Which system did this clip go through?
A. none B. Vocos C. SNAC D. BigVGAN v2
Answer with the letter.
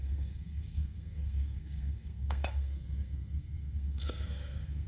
C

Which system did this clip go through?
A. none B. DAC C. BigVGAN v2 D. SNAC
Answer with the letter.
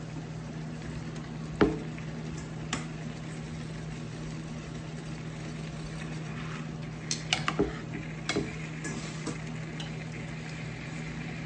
A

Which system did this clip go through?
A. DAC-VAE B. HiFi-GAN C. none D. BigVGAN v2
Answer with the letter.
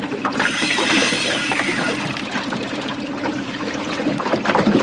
D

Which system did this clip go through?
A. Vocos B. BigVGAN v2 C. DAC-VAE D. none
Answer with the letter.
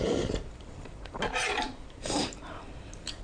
B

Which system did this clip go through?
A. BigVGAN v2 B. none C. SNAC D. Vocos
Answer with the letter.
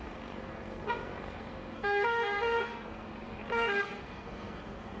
C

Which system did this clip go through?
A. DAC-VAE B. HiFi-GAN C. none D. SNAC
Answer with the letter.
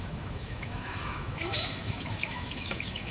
A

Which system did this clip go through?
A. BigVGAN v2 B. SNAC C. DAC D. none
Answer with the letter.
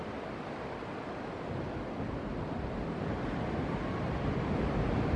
D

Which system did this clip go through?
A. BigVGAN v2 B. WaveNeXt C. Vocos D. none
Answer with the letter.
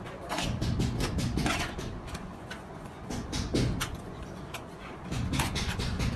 C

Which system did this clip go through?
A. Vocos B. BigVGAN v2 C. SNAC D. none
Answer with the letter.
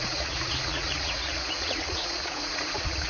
A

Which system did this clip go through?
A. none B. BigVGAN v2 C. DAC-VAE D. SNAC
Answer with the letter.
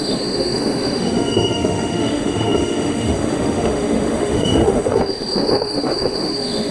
C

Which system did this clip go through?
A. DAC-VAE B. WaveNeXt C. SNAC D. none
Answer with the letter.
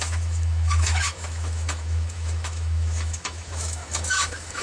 A